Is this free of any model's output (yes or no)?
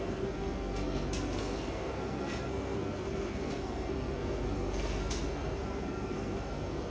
no